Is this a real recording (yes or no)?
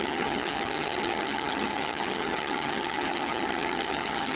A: no